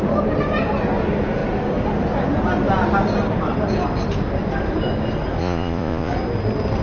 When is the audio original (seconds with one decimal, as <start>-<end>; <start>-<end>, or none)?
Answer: 0.0-5.4; 6.1-6.8